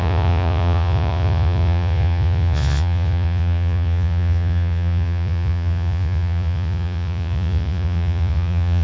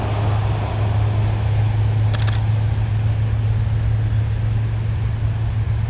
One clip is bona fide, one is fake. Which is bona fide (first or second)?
second